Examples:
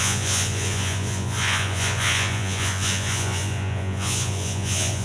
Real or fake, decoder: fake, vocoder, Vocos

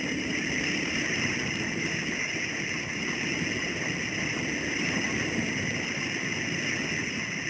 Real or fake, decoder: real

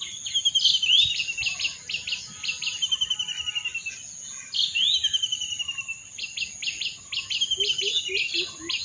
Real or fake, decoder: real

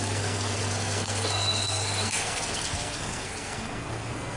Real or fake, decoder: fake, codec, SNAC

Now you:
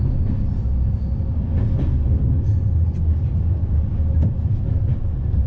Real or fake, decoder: real